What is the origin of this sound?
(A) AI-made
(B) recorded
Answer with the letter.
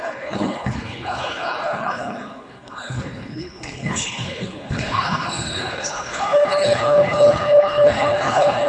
A